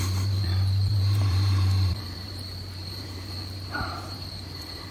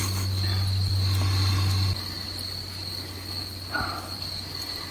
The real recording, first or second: second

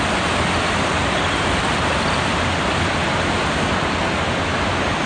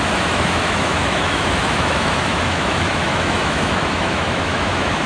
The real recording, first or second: first